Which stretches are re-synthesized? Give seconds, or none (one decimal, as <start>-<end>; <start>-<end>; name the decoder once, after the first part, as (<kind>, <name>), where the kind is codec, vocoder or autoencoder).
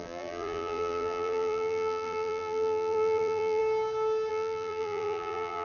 0.0-3.6 (vocoder, BigVGAN v2); 4.3-5.6